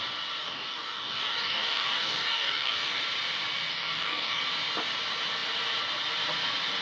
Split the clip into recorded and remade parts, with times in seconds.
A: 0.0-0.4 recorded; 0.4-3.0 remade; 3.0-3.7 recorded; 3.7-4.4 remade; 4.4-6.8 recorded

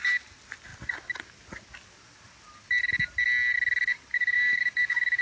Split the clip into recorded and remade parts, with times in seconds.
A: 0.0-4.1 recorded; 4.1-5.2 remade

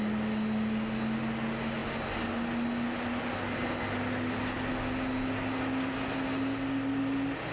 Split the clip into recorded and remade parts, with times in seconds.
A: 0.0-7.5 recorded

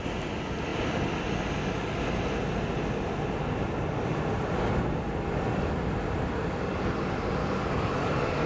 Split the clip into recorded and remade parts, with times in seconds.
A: 0.0-7.4 recorded; 7.4-8.5 remade

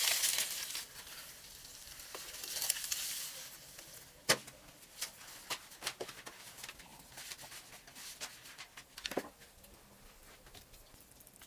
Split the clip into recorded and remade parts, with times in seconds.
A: 0.0-11.5 recorded

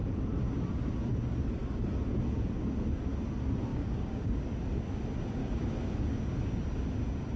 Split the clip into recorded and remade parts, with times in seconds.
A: 0.0-3.7 recorded; 3.7-4.3 remade; 4.3-5.4 recorded; 5.4-6.0 remade; 6.0-7.4 recorded